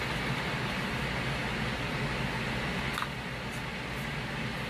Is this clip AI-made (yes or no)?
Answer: no